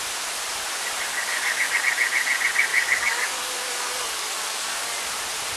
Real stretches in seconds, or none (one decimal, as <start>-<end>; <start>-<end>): 0.0-1.1; 1.8-2.7; 4.9-5.6